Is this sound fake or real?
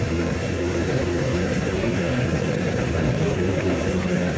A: fake